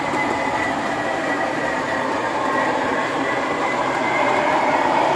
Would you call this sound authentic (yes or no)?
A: no